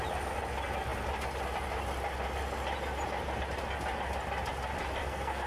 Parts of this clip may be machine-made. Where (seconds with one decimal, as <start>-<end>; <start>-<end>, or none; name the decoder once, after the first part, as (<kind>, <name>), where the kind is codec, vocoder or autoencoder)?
5.0-5.5 (codec, SNAC)